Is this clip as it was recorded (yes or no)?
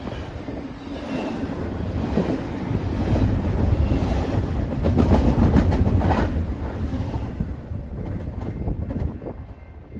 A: yes